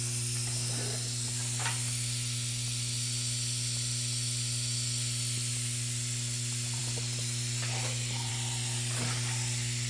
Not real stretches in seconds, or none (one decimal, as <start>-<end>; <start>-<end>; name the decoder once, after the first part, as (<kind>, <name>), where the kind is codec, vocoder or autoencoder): none